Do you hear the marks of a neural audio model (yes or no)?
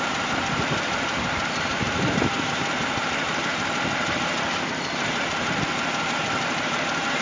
yes